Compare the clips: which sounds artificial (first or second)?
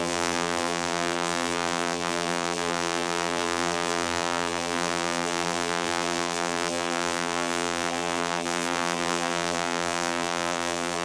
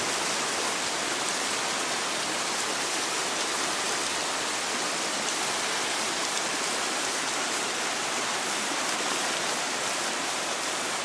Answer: first